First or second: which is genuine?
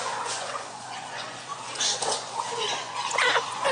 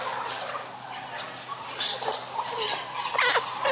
second